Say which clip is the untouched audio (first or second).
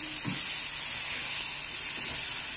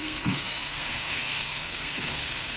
first